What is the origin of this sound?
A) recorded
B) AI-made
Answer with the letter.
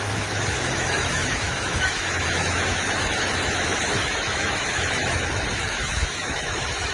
B